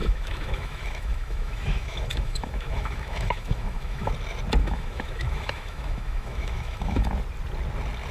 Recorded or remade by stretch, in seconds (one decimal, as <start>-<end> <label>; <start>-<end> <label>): 0.0-4.1 remade; 4.1-4.6 recorded; 4.6-7.1 remade; 7.1-8.1 recorded